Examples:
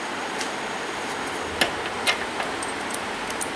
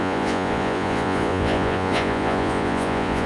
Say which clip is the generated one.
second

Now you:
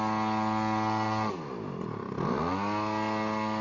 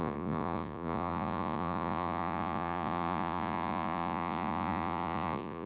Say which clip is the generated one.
second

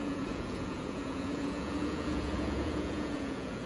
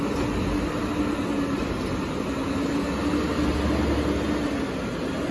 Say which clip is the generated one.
first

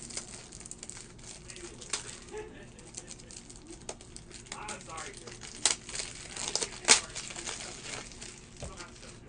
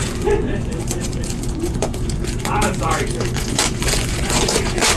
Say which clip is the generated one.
second